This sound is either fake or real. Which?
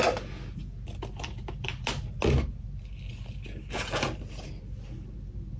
real